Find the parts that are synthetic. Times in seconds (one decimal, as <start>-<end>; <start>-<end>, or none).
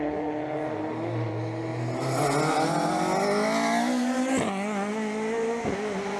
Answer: none